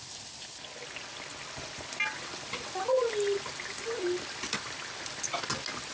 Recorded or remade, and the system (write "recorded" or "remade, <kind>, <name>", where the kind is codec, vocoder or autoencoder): recorded